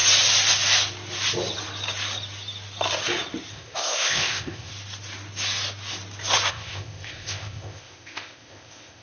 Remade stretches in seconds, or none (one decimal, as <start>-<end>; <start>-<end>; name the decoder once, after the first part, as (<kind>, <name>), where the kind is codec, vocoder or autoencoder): 3.5-4.7 (codec, ZipCodec); 6.5-9.0